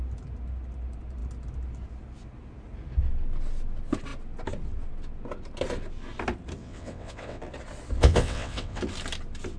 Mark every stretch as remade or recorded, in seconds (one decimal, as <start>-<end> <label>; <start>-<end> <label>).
0.0-6.6 recorded; 6.6-7.4 remade; 7.4-8.0 recorded; 8.0-8.8 remade; 8.8-9.6 recorded